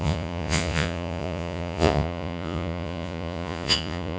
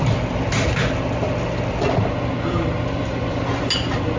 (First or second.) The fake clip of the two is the first